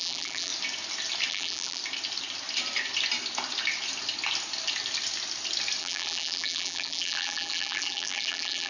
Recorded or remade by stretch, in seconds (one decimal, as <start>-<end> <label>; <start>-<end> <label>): 0.0-0.5 remade; 0.5-1.3 recorded; 1.3-1.8 remade; 1.8-5.8 recorded; 5.8-8.7 remade